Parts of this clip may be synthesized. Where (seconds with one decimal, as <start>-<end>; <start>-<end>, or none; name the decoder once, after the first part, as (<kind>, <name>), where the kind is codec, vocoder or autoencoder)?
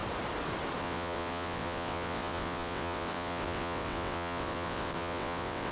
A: 0.8-5.7 (vocoder, WaveNeXt)